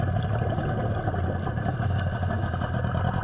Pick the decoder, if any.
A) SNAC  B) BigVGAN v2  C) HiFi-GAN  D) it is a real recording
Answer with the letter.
D